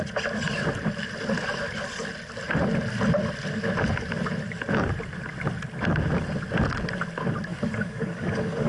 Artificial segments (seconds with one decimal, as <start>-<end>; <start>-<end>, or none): 7.5-8.7